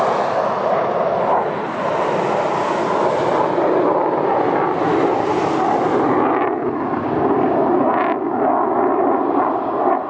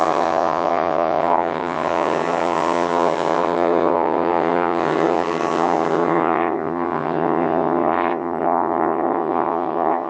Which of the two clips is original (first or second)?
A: first